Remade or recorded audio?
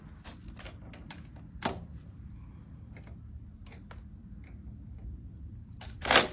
recorded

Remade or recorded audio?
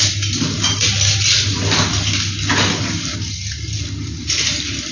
recorded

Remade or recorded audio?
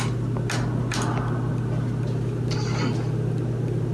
recorded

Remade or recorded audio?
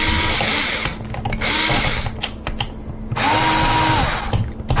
recorded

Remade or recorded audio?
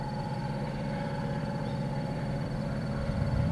remade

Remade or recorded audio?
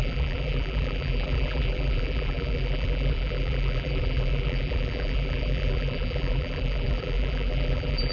remade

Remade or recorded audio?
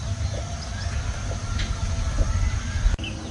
recorded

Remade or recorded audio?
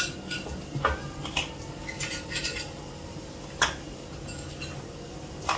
recorded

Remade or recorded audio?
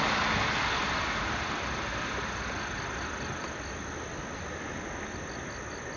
recorded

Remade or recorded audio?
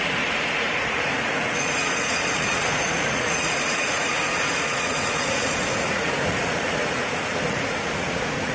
remade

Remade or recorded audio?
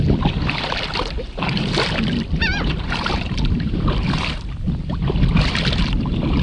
remade